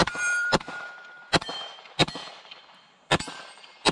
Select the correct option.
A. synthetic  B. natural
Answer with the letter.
A